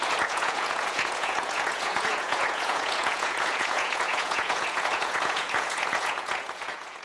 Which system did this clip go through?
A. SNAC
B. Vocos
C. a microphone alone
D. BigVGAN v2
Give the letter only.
B